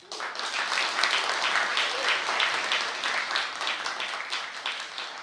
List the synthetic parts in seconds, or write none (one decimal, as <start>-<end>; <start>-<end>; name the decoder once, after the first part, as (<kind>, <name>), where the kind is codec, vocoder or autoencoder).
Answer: none